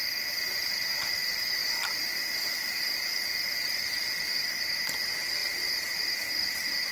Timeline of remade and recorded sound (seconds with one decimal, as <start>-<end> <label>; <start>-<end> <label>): 0.0-6.9 remade